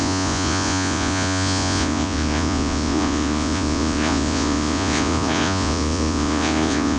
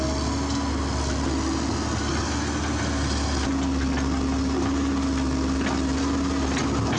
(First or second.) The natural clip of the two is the second